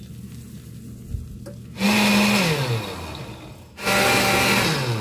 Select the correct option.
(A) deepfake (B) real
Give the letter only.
B